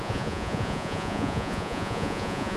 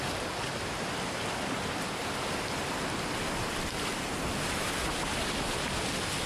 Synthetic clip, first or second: first